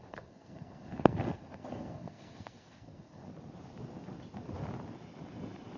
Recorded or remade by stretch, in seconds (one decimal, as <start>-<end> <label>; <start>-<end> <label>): 0.0-3.3 remade; 3.3-5.8 recorded

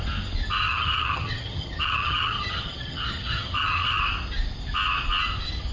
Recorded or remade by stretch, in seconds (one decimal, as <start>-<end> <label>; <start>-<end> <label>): 0.0-0.6 recorded; 0.6-4.0 remade; 4.0-5.7 recorded

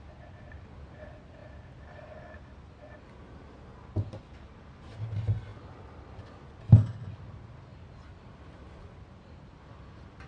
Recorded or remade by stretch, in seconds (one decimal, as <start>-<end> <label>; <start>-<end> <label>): 0.0-10.3 recorded